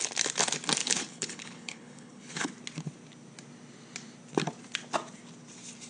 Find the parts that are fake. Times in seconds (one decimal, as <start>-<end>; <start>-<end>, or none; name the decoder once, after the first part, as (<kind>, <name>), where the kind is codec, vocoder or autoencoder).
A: 0.8-2.5 (codec, HILCodec)